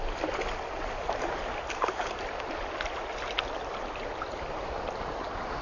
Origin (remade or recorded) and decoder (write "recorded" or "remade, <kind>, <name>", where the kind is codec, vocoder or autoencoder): recorded